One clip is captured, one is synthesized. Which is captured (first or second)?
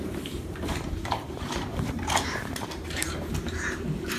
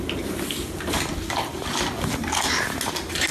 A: second